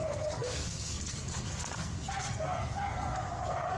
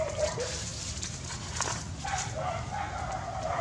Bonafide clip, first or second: second